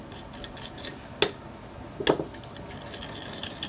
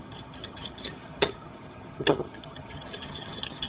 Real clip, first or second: first